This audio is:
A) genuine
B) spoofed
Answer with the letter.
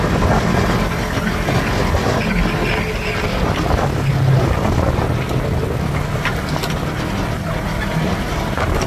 A